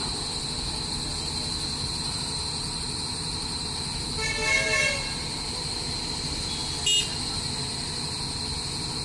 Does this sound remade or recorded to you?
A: recorded